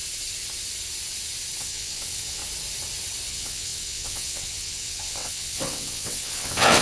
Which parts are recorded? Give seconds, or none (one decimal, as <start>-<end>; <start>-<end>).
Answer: 0.0-1.6; 2.4-3.3